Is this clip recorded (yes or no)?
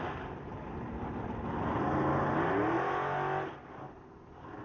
yes